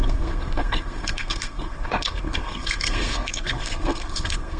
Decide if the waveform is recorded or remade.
remade